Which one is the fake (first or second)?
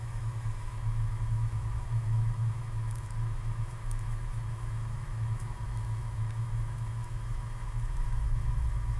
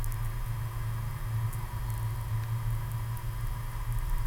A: first